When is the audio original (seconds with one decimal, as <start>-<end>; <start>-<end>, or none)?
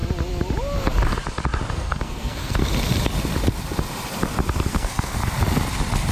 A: 0.0-1.7; 2.6-4.7; 5.2-6.1